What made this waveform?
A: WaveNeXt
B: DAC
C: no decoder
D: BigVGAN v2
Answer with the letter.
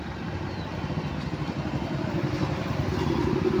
C